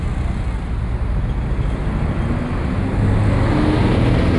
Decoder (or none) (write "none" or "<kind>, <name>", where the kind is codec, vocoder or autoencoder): none